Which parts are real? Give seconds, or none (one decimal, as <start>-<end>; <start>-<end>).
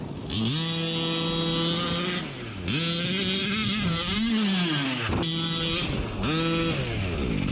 0.0-7.5